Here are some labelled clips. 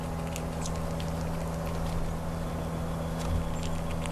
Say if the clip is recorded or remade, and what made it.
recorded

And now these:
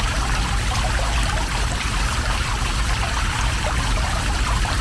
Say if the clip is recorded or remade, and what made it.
recorded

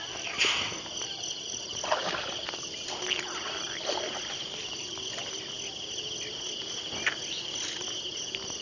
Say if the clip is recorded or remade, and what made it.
recorded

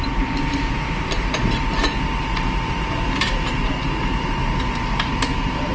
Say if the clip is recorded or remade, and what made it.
remade, vocoder, BigVGAN v2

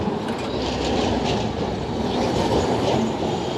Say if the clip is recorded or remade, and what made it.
recorded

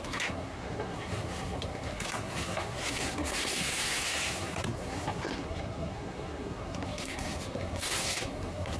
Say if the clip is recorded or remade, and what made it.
remade, codec, SNAC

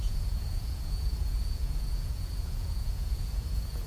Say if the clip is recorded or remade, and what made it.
remade, vocoder, Vocos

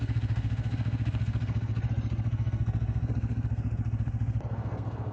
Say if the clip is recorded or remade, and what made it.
remade, codec, SNAC